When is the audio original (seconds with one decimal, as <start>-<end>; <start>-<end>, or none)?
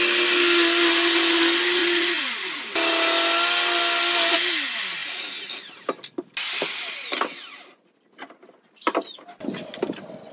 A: 0.0-1.8; 2.6-10.3